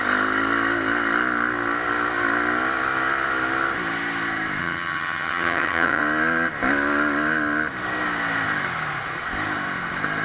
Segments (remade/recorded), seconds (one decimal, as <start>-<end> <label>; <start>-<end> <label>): 0.0-4.6 recorded; 4.6-6.0 remade; 6.0-10.2 recorded